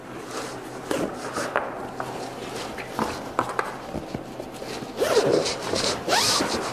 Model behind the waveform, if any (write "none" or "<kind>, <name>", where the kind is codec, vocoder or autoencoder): none